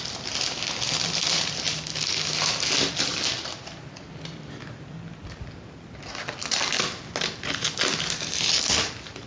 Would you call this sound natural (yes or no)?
yes